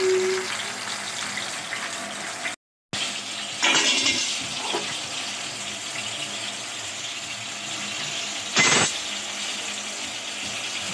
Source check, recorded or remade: recorded